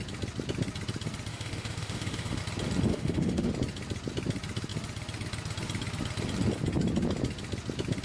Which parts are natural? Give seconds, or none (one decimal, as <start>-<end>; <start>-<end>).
0.0-1.3; 2.4-2.9; 3.5-8.0